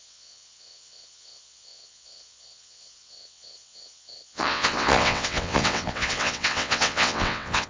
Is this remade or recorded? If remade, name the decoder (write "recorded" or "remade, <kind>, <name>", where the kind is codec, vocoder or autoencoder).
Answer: remade, vocoder, WaveNeXt